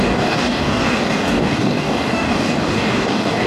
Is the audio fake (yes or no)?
yes